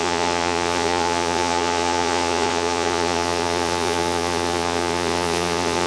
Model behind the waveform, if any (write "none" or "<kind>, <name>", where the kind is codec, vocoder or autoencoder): vocoder, Vocos